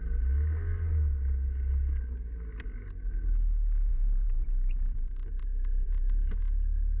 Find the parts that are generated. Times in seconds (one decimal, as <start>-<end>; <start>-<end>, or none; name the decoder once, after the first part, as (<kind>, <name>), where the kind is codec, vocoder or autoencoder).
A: 3.9-6.4 (vocoder, BigVGAN v2)